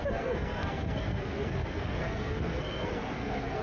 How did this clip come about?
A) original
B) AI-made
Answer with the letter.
B